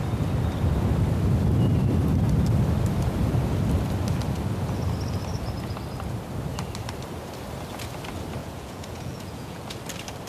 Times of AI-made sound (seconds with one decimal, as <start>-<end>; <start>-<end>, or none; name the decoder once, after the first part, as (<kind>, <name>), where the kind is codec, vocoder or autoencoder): 8.4-9.8 (vocoder, Vocos)